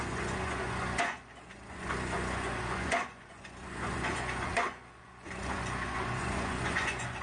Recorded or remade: remade